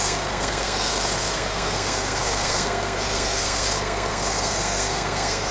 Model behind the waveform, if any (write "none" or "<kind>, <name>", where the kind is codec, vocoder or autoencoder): codec, SNAC